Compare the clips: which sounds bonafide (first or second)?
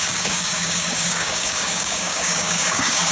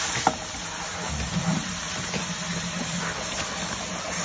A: second